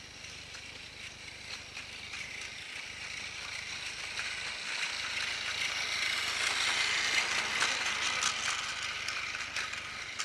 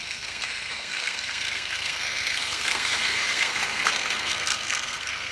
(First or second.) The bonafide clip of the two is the first